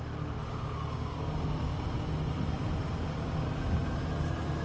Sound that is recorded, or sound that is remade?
recorded